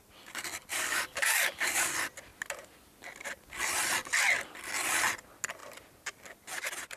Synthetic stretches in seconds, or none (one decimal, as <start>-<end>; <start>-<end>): 0.7-1.9